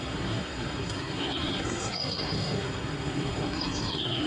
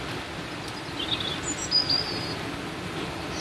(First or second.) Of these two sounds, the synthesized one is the first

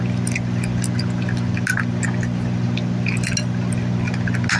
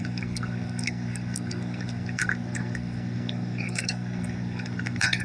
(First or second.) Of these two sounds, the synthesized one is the second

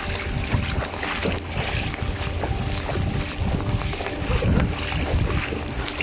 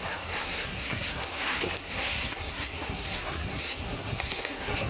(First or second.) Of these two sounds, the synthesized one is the second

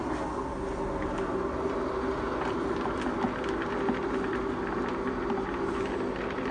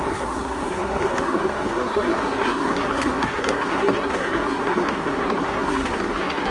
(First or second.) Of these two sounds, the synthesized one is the second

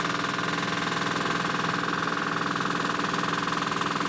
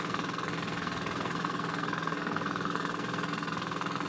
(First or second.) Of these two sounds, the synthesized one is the second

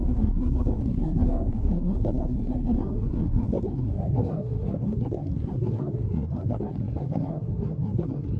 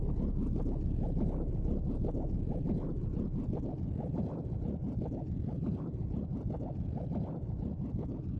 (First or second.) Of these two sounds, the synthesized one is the first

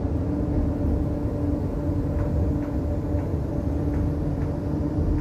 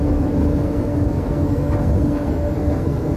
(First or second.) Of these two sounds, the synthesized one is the second